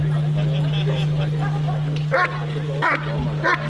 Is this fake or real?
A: real